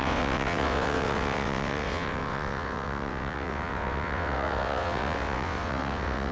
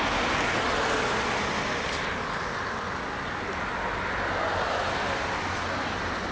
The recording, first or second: second